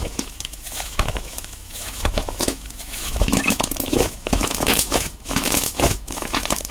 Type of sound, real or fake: fake